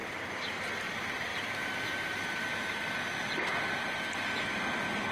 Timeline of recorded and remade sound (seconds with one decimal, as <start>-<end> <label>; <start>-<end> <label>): 0.0-0.7 remade; 0.7-1.3 recorded; 1.3-2.5 remade; 2.5-5.1 recorded